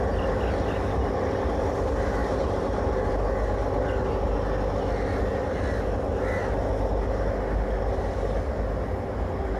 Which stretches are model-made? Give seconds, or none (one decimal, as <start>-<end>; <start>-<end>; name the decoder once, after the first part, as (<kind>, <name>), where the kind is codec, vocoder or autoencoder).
2.2-3.1 (vocoder, BigVGAN v2)